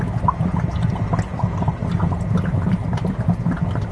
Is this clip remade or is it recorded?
recorded